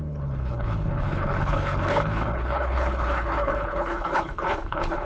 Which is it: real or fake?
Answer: fake